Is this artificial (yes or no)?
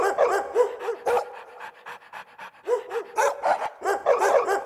no